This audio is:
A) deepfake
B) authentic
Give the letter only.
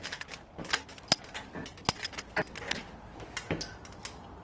B